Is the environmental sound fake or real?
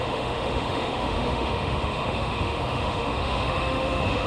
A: fake